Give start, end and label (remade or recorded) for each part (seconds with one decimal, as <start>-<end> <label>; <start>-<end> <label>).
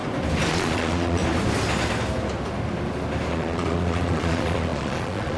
0.0-0.5 recorded; 0.5-1.2 remade; 1.2-3.3 recorded; 3.3-5.4 remade